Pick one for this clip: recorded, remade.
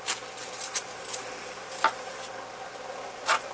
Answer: recorded